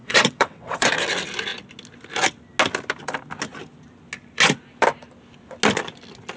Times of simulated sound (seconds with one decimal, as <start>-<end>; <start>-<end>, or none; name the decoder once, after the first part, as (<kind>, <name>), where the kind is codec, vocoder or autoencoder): 0.0-0.9 (vocoder, WaveNeXt)